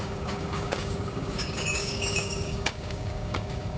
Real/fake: fake